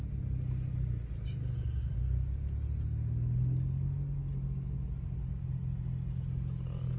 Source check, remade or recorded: recorded